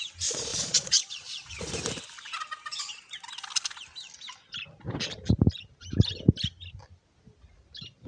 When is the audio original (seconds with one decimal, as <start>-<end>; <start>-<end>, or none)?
0.0-0.5; 1.6-8.1